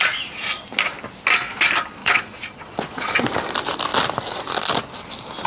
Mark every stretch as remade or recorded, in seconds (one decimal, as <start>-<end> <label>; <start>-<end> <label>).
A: 0.0-2.0 recorded; 2.0-3.2 remade; 3.2-5.5 recorded